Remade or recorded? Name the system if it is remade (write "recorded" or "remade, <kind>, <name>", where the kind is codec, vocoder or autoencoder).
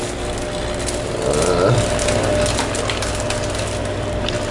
recorded